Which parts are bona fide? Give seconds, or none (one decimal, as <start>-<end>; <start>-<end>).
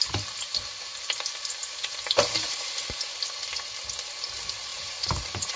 0.0-4.7